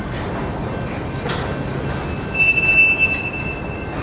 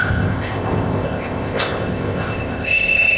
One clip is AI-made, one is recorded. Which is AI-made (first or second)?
second